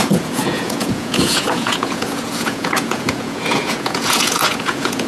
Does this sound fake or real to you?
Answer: fake